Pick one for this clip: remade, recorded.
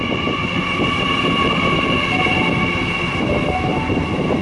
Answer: recorded